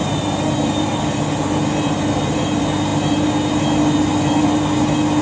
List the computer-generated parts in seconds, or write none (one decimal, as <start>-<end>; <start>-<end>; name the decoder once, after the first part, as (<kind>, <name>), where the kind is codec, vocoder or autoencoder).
none